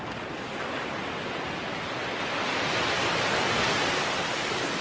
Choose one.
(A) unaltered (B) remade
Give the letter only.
A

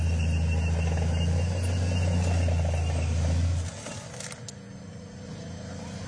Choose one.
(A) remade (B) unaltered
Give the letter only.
B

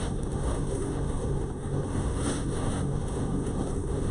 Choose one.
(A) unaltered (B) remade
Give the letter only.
B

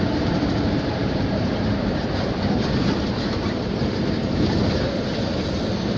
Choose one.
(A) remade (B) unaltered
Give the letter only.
A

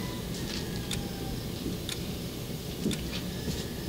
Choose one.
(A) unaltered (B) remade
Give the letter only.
A